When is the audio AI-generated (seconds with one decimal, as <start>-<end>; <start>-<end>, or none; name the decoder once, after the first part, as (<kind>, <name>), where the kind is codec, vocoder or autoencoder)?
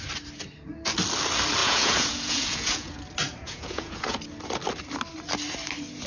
1.6-3.0 (vocoder, Vocos); 3.4-4.2